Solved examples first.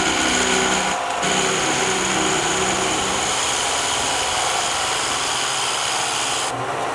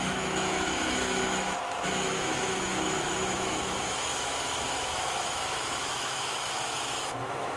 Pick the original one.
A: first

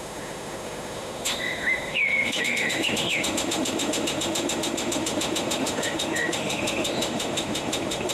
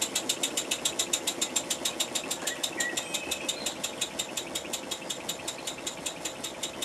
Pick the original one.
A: second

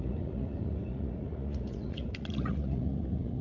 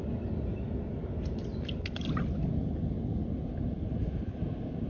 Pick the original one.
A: second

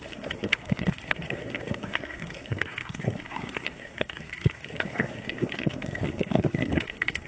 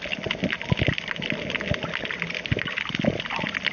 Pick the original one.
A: second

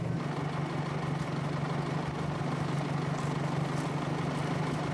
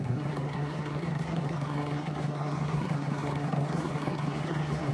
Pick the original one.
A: first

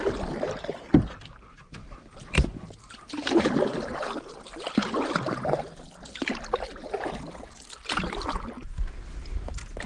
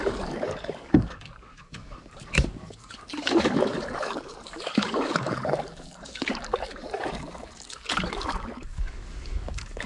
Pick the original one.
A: first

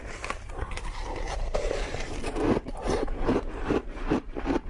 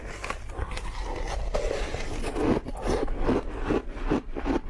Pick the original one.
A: second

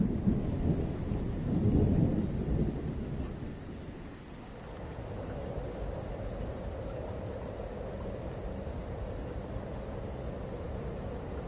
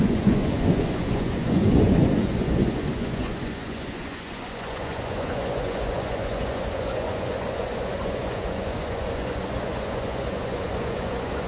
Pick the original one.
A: first